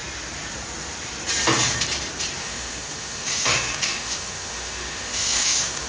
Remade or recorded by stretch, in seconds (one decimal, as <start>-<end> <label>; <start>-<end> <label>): 0.0-2.4 recorded; 2.4-5.9 remade